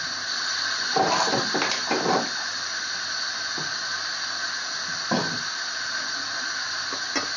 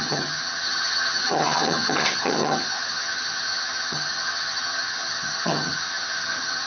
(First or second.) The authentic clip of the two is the first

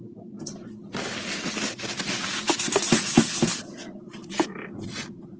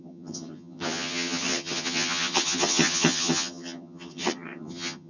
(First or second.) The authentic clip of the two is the first